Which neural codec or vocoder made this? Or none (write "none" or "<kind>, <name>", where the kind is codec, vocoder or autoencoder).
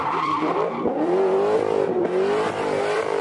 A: vocoder, BigVGAN v2